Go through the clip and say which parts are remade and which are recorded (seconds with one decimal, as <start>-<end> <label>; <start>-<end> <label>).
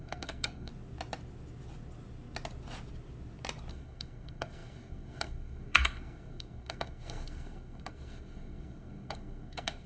0.0-0.7 remade; 0.7-3.7 recorded; 3.7-9.9 remade